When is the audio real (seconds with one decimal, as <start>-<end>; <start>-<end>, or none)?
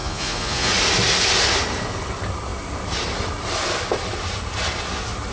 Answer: 0.7-5.3